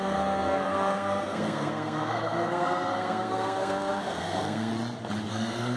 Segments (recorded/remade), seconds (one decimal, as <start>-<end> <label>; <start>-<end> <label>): 0.0-4.7 remade; 4.7-5.3 recorded; 5.3-5.8 remade